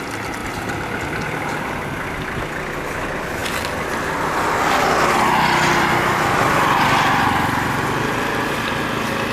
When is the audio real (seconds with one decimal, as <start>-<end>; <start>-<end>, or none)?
0.0-9.3